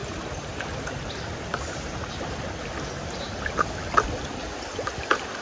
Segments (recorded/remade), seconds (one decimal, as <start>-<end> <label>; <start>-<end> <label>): 0.0-5.4 recorded